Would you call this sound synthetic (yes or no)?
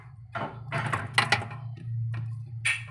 no